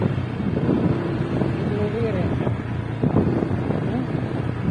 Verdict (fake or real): fake